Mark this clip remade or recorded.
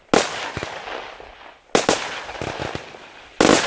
recorded